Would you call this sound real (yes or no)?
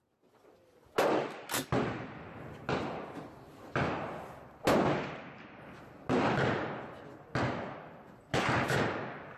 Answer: yes